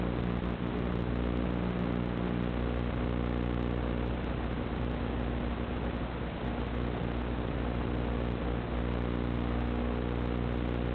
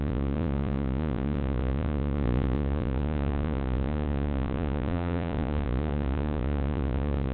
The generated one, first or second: second